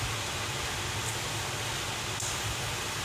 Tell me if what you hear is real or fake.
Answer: real